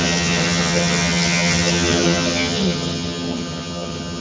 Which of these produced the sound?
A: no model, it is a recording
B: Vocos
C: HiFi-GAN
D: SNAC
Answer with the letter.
C